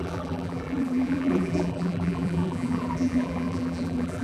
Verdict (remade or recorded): remade